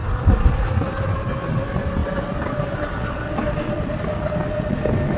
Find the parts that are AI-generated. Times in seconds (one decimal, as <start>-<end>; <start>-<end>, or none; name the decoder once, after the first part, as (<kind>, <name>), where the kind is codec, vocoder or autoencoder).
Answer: none